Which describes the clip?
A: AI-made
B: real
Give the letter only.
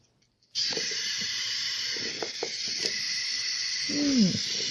B